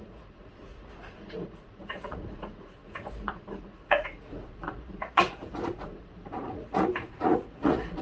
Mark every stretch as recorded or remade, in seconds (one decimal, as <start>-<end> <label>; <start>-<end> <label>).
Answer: 0.0-8.0 remade